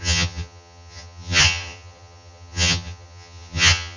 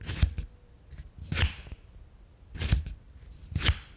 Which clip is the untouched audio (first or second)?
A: second